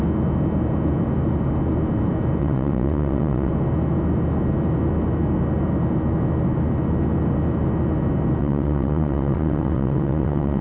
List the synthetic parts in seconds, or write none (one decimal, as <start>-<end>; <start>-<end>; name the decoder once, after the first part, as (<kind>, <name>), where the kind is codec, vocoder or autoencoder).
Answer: 2.4-3.5 (vocoder, WaveNeXt); 8.4-10.6